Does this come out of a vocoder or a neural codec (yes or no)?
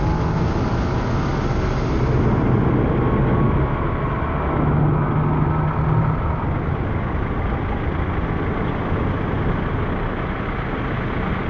no